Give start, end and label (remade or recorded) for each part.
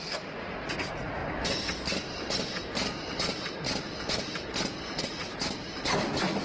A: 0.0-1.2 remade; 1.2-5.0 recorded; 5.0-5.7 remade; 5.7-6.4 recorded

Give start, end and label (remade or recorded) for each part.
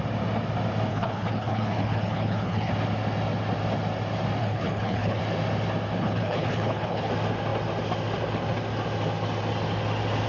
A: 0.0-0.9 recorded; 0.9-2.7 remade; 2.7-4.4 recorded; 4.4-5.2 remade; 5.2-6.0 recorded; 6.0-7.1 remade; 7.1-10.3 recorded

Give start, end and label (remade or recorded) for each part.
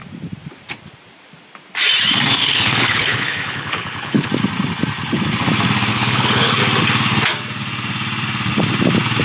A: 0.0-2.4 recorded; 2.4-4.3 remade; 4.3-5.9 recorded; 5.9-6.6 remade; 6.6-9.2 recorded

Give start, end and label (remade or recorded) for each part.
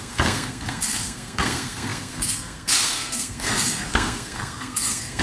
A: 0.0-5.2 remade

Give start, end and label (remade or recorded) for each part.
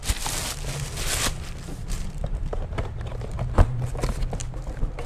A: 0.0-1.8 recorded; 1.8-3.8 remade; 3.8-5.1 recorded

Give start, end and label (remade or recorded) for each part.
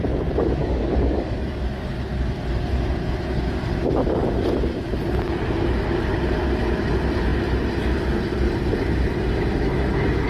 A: 0.0-0.6 recorded; 0.6-1.6 remade; 1.6-10.3 recorded